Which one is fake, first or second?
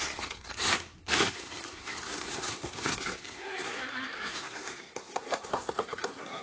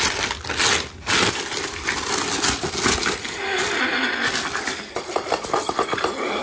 first